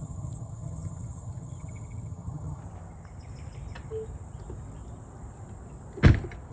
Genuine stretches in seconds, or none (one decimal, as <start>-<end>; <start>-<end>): 2.6-6.5

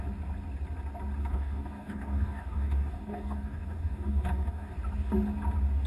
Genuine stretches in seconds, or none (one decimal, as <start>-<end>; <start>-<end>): 0.0-1.2; 4.7-5.9

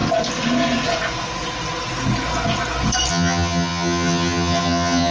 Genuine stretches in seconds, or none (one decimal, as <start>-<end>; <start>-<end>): 0.0-3.1

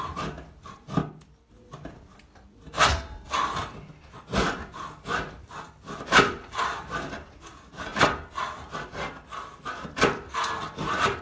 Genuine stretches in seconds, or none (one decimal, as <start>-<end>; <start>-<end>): 1.0-1.5; 2.1-4.2; 7.9-9.7

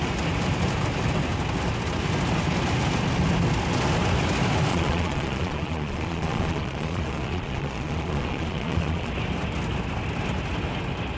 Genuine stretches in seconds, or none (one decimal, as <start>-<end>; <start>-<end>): 0.0-4.7; 9.1-11.2

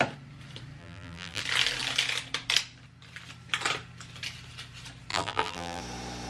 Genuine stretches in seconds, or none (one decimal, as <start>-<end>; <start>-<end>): 0.0-0.8; 1.4-5.1; 5.8-6.3